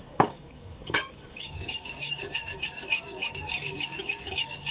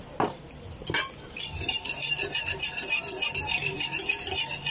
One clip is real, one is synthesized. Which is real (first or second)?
second